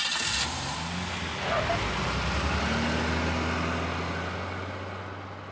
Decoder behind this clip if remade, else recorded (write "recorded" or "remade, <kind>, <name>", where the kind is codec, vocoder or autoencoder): recorded